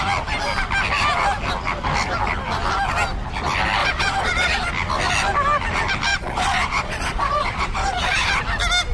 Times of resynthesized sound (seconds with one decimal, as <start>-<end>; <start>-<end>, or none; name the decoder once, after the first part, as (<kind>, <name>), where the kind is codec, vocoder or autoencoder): 3.8-4.7 (vocoder, Vocos); 6.1-8.4